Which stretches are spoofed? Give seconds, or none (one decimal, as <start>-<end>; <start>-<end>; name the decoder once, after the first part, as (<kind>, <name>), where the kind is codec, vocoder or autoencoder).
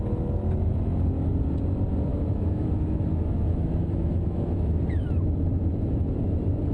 2.1-4.8 (autoencoder, DAC-VAE)